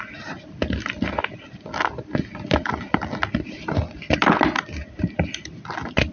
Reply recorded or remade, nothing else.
recorded